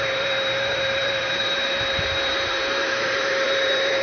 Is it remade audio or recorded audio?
remade